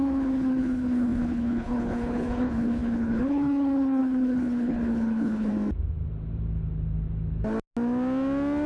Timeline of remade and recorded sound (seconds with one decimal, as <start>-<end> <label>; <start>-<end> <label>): 0.0-5.5 remade; 5.5-8.7 recorded